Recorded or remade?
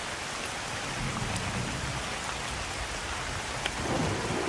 recorded